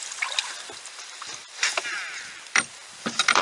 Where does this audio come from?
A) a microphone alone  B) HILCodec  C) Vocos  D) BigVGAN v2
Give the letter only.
D